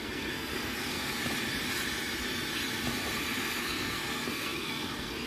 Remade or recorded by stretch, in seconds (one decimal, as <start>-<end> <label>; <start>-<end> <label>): 0.0-1.2 remade; 1.2-3.6 recorded; 3.6-5.3 remade